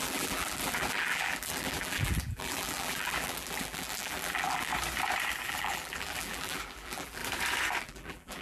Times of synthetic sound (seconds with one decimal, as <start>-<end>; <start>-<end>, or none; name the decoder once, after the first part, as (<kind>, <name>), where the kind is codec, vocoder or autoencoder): 0.0-4.7 (vocoder, BigVGAN v2); 5.4-7.2; 7.8-8.4

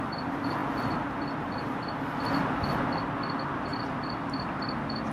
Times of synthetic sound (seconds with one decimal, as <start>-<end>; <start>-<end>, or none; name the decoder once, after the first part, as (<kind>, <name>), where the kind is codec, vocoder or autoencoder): none

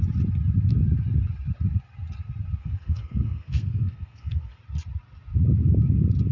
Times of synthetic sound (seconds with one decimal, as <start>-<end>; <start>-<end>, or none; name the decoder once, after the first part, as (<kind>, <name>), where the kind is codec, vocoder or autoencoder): 2.6-4.6 (codec, SNAC)

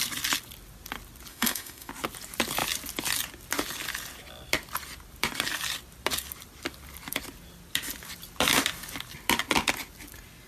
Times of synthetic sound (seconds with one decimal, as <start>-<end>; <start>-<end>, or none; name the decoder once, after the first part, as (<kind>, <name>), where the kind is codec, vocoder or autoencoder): 1.3-1.9 (autoencoder, DAC-VAE)

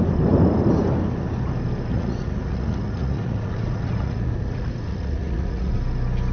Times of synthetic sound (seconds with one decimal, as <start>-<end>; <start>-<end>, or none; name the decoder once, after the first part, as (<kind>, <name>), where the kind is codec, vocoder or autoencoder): 1.9-5.7 (vocoder, Vocos)

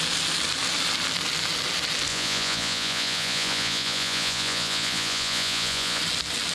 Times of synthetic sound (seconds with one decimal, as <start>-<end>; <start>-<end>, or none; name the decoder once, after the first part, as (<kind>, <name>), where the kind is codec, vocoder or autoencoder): 2.1-6.0 (vocoder, Vocos)

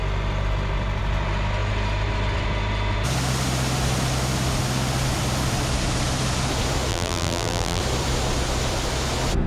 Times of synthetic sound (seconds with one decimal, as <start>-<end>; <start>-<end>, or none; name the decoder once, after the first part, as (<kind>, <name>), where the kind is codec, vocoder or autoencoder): 6.9-7.8 (vocoder, BigVGAN v2)

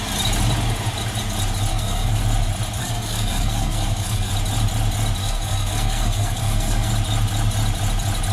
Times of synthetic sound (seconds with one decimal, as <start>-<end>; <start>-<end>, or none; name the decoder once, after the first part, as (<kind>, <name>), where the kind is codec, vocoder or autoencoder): 1.7-2.2 (codec, SNAC); 2.8-4.3; 5.2-6.9